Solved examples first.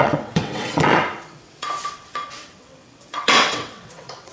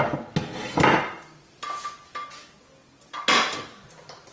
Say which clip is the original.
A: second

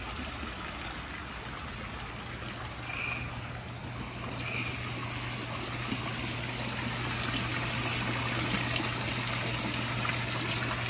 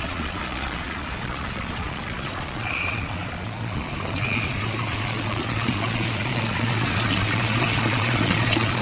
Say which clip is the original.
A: first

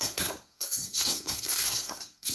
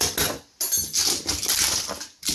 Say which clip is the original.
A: second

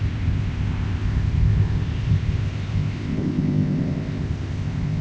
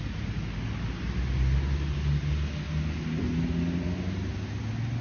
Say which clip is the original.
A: second